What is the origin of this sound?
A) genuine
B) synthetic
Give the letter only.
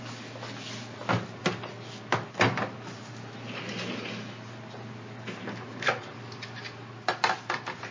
A